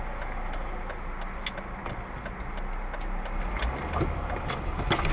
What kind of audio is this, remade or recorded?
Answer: recorded